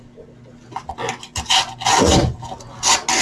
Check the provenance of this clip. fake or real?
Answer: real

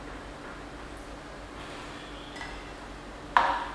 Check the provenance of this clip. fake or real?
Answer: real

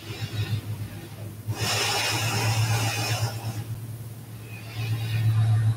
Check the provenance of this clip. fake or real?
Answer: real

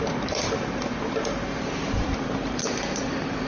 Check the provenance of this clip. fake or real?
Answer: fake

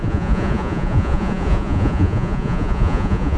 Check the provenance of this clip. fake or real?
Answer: fake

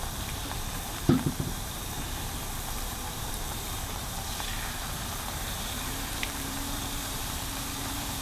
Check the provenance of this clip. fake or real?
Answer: fake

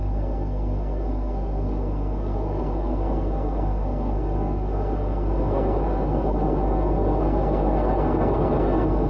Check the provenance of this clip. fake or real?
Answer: fake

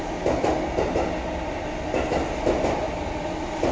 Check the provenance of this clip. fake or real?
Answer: real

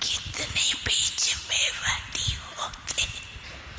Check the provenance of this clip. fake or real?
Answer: real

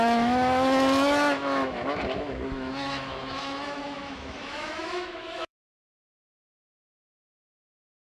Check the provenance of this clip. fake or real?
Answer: fake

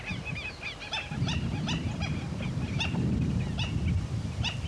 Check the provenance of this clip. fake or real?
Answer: real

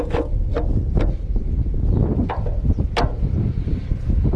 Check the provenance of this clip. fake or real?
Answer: real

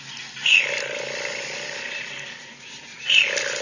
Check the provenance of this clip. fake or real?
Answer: real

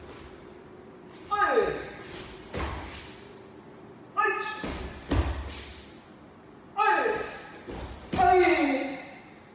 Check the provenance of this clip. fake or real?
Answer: real